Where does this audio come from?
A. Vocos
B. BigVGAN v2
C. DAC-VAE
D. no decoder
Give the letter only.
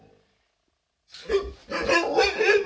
D